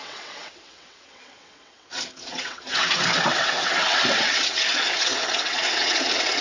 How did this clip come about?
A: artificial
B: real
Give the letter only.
A